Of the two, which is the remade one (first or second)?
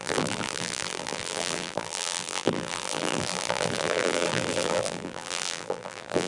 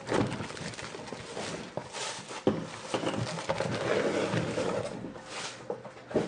first